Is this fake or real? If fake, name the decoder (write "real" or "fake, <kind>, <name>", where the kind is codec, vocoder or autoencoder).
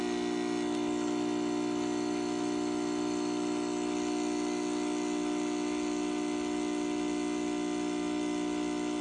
real